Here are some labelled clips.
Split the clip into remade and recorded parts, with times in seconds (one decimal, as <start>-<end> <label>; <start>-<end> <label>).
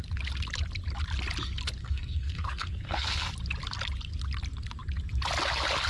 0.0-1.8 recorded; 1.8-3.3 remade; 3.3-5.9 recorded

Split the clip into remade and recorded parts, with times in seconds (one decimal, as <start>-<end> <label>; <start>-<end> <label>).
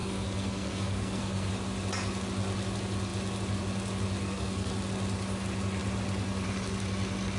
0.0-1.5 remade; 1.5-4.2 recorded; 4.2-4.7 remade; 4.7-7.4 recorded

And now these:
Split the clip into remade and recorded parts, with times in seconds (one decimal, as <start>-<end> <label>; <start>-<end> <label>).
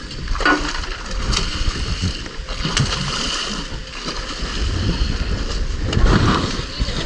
0.0-7.1 recorded